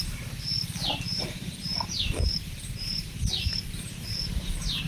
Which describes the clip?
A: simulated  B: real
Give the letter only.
A